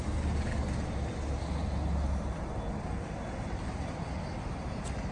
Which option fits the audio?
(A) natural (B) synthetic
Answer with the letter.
A